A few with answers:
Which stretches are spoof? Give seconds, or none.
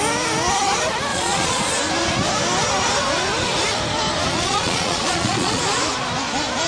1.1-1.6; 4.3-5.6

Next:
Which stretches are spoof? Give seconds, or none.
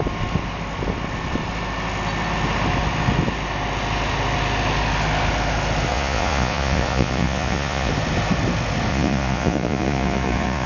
5.9-7.9; 8.9-10.7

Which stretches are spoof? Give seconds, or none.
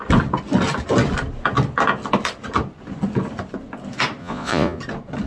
4.2-4.8